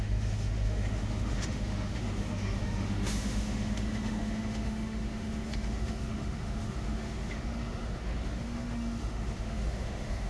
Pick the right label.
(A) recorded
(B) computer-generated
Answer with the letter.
B